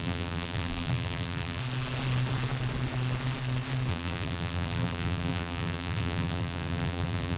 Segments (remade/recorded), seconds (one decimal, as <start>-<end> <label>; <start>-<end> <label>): 0.0-1.6 remade; 1.6-3.9 recorded; 3.9-7.4 remade